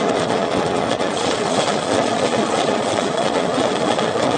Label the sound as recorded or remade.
remade